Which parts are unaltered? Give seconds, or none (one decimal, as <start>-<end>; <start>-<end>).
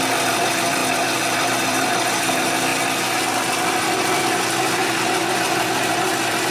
none